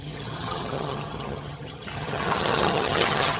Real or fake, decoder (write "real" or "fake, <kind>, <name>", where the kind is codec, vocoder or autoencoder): fake, vocoder, HiFi-GAN